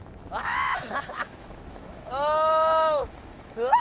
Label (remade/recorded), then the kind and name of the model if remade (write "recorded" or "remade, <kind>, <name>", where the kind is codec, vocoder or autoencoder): remade, autoencoder, DAC-VAE